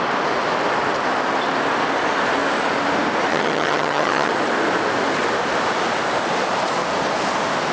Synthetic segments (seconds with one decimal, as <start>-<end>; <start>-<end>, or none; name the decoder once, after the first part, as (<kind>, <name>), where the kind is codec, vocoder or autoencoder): 3.3-4.3 (vocoder, HiFi-GAN)

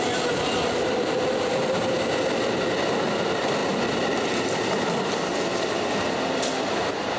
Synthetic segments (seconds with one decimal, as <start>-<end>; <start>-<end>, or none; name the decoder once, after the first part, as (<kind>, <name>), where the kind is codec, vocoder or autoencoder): none